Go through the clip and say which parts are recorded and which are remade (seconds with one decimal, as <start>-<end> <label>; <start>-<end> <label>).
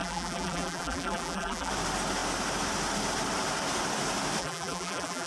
0.0-1.7 remade; 1.7-4.4 recorded; 4.4-5.3 remade